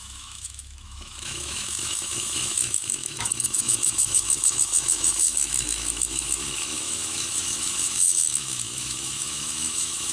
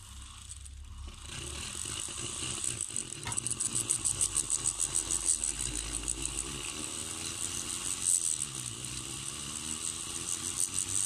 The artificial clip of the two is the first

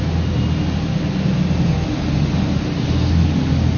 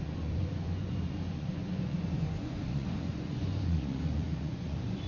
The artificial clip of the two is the second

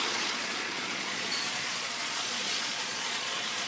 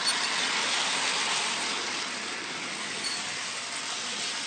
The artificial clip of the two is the first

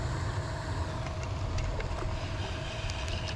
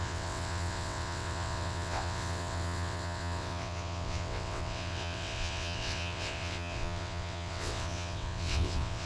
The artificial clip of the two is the second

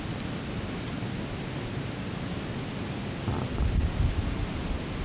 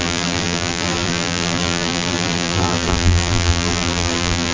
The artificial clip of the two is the second